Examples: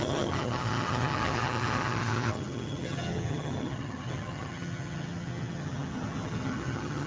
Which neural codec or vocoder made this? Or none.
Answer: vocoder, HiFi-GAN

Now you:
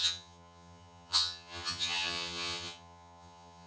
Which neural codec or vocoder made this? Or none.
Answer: vocoder, HiFi-GAN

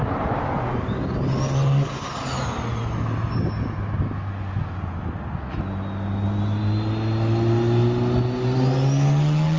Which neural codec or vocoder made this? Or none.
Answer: none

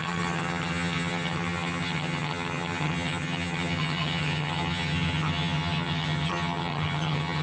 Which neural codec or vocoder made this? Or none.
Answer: vocoder, HiFi-GAN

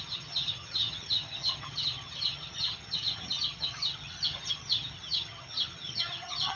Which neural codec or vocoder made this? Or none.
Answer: vocoder, HiFi-GAN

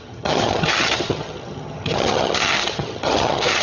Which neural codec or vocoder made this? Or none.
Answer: vocoder, HiFi-GAN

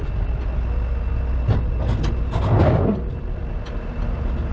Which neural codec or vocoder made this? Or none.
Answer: none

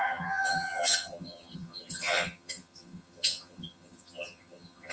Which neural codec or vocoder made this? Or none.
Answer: vocoder, HiFi-GAN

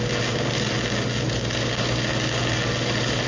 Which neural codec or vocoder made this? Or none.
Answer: none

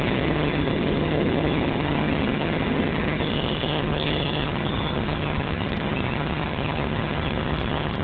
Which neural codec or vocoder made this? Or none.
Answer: vocoder, HiFi-GAN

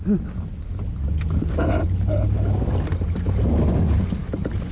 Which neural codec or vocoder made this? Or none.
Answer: none